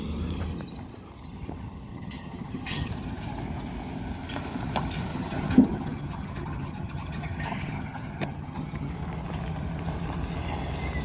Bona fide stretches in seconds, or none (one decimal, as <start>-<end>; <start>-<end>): 0.0-1.9; 2.9-5.1; 8.9-11.0